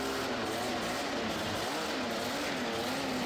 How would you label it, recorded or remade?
recorded